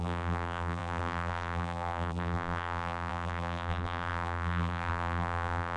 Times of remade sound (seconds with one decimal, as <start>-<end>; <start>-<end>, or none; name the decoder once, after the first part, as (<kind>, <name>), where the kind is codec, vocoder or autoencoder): 0.0-5.8 (vocoder, BigVGAN v2)